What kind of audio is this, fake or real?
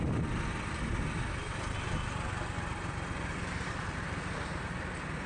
real